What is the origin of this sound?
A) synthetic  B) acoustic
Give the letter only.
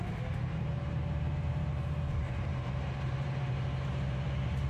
A